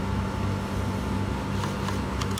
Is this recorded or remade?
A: recorded